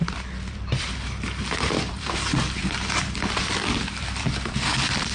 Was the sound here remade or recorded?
remade